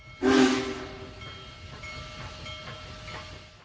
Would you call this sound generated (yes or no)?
no